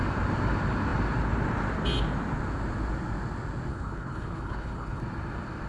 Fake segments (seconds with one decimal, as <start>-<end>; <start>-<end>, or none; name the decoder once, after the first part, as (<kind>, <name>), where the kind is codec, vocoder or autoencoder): 3.7-5.0 (codec, HILCodec)